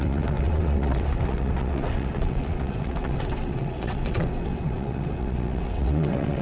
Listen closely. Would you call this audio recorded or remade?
remade